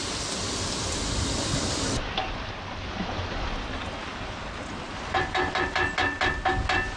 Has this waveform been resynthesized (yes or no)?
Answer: no